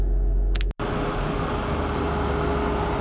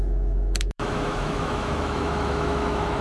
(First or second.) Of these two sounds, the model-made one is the second